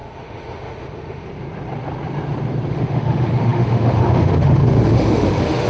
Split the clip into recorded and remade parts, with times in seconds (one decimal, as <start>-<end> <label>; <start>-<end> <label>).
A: 0.0-1.3 remade; 1.3-2.7 recorded; 2.7-5.7 remade